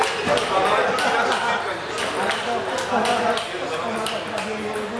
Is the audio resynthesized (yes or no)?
no